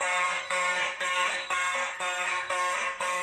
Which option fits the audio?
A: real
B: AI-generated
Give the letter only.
B